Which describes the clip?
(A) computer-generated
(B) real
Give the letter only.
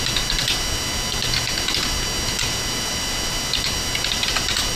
B